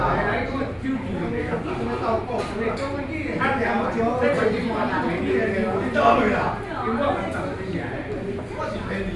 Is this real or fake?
real